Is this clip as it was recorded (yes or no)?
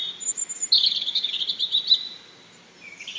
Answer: yes